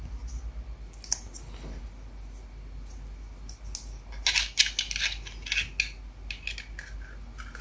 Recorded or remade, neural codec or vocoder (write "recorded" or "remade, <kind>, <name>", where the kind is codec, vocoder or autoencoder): recorded